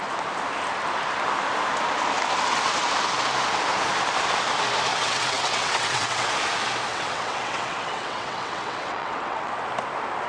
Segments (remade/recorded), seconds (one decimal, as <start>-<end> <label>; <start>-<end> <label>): 0.0-4.9 recorded; 4.9-6.3 remade; 6.3-6.9 recorded; 6.9-9.5 remade; 9.5-10.3 recorded